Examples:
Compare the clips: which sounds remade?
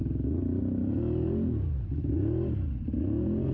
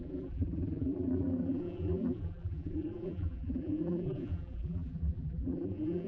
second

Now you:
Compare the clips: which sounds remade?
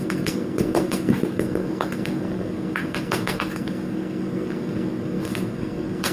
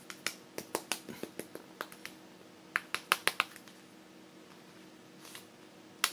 first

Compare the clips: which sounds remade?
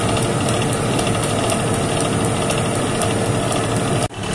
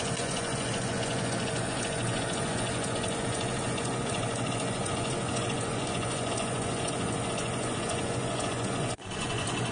second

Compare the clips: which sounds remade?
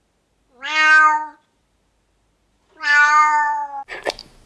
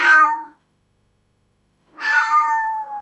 second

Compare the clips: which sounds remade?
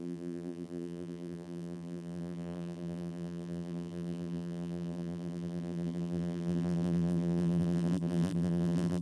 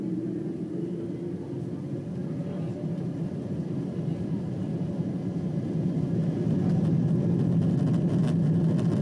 first